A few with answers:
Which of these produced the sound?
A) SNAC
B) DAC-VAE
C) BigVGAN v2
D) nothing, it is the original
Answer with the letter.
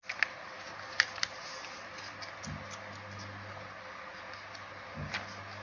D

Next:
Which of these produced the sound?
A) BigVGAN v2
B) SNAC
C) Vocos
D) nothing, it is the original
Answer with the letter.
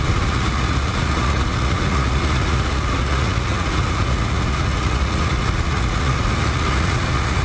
C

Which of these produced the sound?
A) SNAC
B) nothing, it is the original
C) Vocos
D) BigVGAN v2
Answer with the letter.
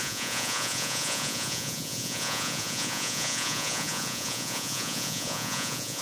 C